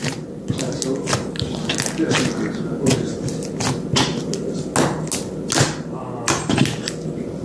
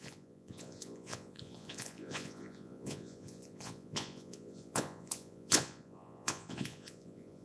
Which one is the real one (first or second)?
first